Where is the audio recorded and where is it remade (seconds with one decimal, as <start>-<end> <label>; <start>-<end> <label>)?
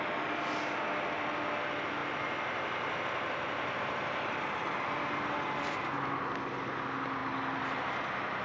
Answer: 0.0-8.4 recorded